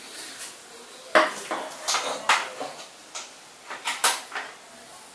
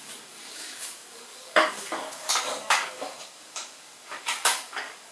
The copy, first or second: second